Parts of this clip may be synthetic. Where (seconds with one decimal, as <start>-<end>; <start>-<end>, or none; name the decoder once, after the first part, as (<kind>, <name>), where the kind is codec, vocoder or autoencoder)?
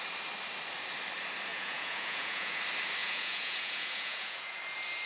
1.5-2.6 (vocoder, Vocos); 3.0-4.6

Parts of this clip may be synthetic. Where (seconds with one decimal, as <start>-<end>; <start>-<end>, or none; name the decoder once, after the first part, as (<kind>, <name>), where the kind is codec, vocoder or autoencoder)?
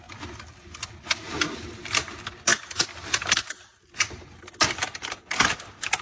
none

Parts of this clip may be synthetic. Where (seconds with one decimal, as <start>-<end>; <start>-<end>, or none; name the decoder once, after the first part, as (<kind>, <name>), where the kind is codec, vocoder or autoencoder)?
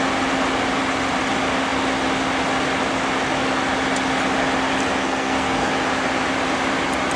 5.0-5.7 (codec, SNAC)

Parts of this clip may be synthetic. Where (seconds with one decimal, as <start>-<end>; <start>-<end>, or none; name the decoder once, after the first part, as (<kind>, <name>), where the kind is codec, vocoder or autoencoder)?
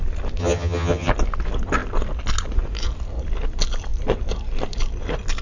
0.4-1.1 (vocoder, HiFi-GAN)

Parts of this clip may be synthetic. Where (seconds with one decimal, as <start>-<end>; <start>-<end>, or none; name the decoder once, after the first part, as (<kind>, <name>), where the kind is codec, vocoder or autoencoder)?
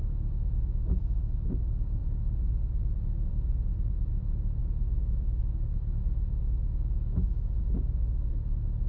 0.0-1.6 (autoencoder, DAC-VAE); 4.6-7.6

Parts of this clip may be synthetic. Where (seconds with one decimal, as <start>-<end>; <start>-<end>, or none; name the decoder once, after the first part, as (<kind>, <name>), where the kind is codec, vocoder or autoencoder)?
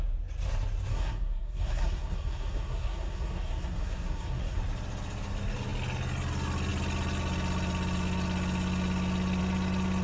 0.9-4.6 (codec, SNAC)